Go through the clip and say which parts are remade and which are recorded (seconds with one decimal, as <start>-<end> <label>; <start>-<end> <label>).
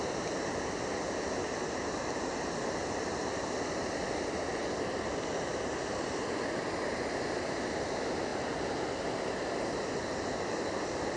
0.0-11.2 recorded